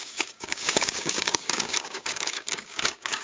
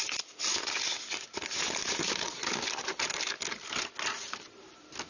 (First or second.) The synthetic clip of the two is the first